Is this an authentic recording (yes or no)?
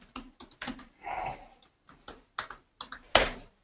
yes